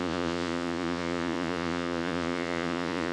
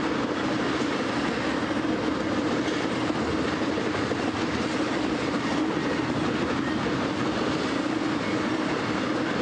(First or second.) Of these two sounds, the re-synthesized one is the first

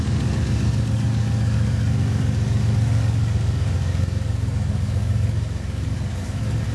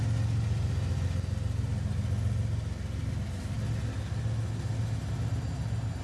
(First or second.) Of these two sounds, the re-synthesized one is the first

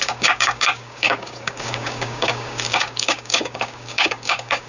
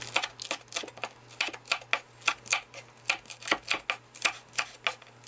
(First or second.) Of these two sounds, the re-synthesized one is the first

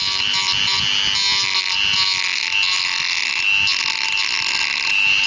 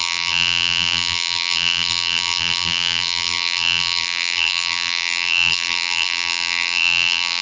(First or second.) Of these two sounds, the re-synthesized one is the second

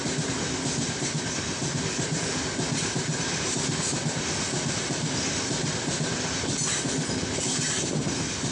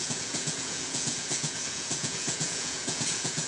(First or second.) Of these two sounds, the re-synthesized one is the second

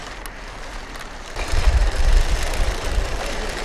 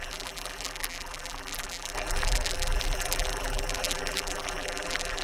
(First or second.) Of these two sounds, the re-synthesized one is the second